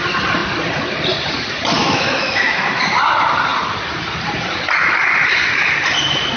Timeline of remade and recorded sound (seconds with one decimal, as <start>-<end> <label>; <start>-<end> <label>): 0.0-1.8 recorded; 1.8-2.8 remade; 2.8-6.4 recorded